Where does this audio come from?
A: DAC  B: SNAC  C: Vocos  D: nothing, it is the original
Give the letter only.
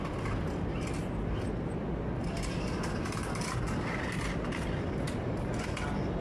D